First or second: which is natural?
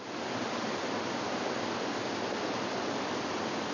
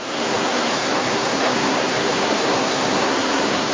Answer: first